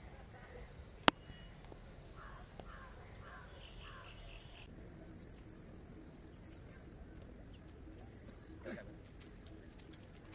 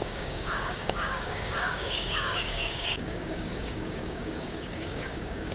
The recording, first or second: first